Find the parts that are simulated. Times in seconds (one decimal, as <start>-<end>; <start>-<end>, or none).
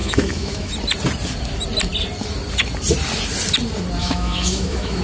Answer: 0.0-0.7; 4.0-5.0